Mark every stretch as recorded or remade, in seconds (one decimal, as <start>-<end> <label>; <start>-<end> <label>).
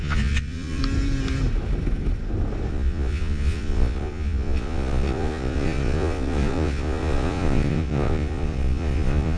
0.0-0.8 remade; 0.8-2.7 recorded; 2.7-9.4 remade